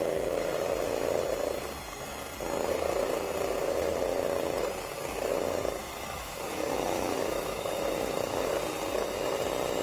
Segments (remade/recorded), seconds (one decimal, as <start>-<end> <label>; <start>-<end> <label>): 0.0-5.8 recorded; 5.8-8.5 remade; 8.5-9.8 recorded